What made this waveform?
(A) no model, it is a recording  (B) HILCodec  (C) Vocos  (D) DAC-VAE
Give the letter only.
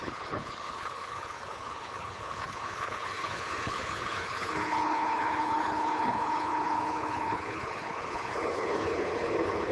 B